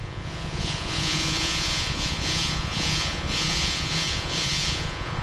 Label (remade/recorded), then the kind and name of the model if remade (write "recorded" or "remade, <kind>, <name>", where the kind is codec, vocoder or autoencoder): remade, vocoder, Vocos